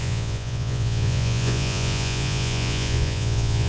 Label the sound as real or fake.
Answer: fake